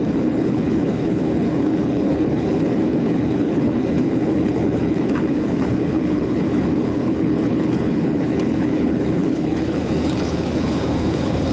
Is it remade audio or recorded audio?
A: remade